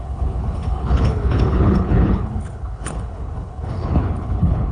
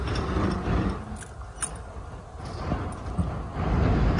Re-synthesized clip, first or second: first